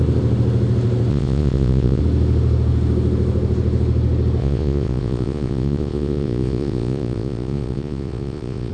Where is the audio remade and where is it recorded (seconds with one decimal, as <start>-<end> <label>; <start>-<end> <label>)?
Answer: 0.0-1.1 recorded; 1.1-2.0 remade; 2.0-4.4 recorded; 4.4-8.7 remade